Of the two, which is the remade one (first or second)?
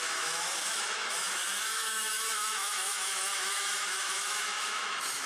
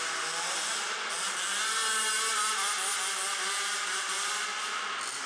first